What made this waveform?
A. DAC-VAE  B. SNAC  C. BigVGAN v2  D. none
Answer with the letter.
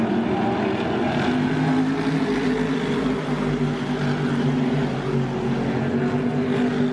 D